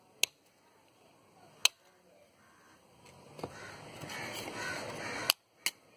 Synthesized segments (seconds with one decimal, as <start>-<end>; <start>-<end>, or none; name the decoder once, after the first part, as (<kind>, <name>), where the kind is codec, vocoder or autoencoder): none